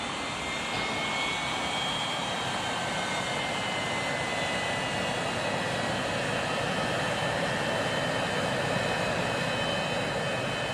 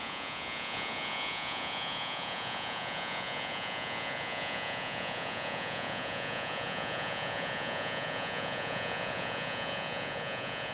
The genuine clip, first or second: first